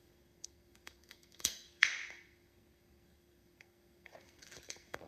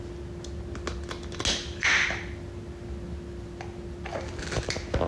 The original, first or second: second